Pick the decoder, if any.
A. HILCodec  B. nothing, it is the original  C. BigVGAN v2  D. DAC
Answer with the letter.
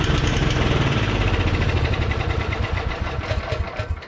C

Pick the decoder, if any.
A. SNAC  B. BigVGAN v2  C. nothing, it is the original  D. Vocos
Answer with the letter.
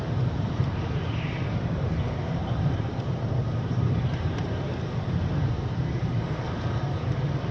B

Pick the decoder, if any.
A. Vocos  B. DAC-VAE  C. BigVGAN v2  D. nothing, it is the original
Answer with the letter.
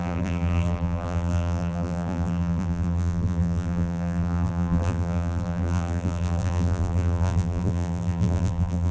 C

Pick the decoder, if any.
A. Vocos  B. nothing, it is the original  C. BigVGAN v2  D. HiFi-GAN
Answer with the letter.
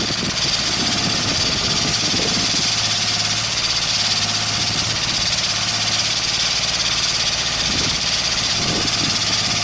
C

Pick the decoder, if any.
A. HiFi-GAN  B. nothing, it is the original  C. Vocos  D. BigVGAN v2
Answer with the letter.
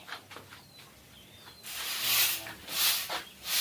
B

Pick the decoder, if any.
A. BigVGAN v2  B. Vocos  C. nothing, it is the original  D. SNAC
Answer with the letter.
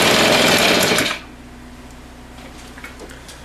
A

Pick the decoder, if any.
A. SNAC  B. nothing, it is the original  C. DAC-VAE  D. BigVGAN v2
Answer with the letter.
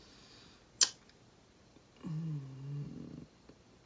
B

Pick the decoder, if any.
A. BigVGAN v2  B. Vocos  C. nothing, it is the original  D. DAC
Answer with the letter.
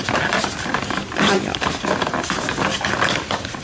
A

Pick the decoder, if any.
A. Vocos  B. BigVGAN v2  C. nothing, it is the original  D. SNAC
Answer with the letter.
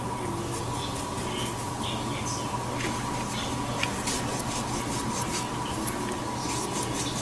C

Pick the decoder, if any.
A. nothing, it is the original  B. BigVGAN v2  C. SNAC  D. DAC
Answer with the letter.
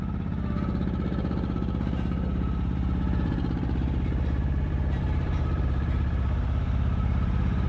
B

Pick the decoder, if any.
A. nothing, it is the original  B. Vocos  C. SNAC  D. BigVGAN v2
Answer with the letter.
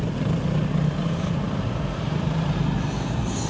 D